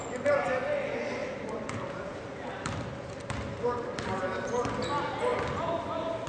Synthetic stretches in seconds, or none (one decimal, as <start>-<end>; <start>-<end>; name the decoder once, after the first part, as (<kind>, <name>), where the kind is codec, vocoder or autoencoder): 1.2-1.7 (vocoder, BigVGAN v2); 2.1-4.2